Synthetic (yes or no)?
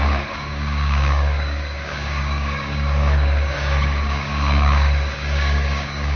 yes